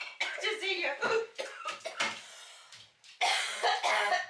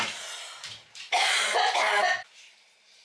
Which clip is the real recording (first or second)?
first